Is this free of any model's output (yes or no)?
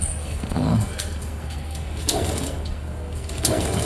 no